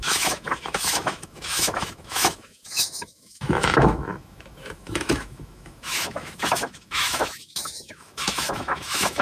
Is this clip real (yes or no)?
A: no